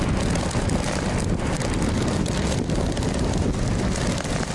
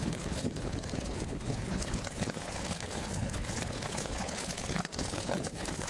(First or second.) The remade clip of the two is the second